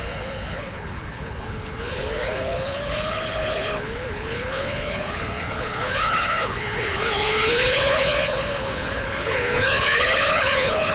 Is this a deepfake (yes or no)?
yes